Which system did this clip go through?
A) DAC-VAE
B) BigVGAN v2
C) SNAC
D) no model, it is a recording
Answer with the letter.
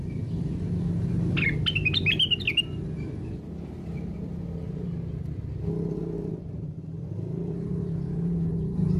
D